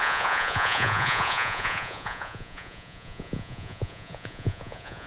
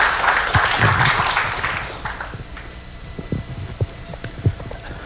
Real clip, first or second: second